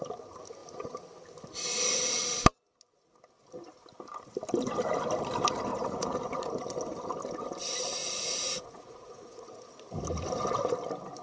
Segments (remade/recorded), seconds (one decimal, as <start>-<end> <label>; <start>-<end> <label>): 0.0-5.7 recorded; 5.7-6.5 remade; 6.5-8.0 recorded; 8.0-9.6 remade; 9.6-11.2 recorded